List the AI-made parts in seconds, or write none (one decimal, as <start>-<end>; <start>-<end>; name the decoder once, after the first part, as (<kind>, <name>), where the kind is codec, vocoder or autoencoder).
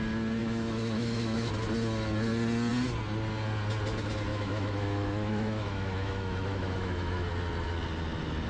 0.4-1.5 (autoencoder, DAC-VAE); 4.3-7.3